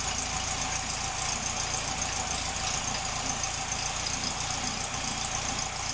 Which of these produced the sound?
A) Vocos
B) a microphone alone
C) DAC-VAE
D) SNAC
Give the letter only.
B